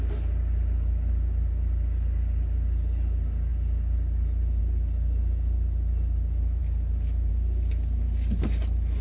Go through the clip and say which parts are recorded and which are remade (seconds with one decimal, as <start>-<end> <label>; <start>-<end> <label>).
0.0-9.0 recorded